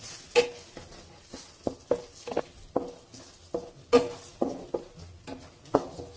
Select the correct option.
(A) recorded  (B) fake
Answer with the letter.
A